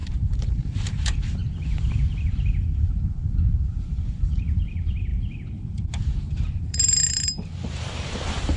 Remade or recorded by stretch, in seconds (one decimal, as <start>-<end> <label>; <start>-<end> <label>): 0.0-8.6 remade